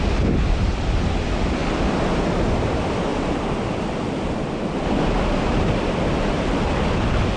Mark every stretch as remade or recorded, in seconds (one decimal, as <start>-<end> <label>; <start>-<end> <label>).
0.0-7.4 recorded